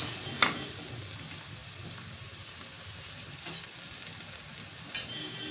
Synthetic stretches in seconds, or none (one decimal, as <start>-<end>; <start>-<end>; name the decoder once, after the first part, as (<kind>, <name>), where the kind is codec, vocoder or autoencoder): none